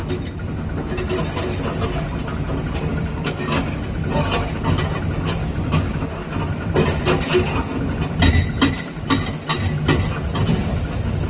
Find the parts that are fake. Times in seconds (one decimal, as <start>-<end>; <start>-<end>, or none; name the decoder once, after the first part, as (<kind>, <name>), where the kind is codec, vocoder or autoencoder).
2.9-3.8 (codec, DAC); 5.4-6.1